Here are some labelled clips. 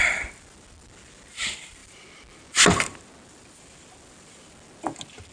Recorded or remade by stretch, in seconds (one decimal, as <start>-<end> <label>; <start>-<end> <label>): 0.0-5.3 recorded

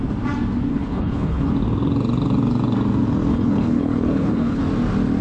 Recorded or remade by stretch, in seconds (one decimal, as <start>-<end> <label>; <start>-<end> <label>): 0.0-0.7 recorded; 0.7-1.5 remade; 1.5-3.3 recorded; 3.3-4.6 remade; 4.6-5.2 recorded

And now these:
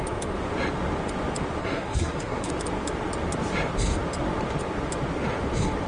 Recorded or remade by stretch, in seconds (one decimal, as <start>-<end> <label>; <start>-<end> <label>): 0.0-1.6 recorded; 1.6-2.5 remade; 2.5-5.9 recorded

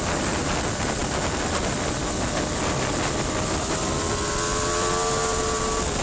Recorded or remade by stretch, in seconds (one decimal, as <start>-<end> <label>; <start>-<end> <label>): 0.0-6.0 recorded

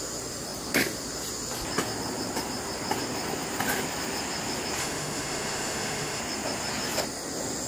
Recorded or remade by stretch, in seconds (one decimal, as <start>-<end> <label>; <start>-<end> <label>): 0.0-4.8 recorded; 4.8-6.2 remade; 6.2-7.7 recorded